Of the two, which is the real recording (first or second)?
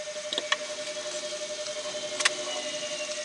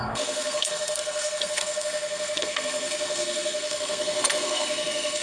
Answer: first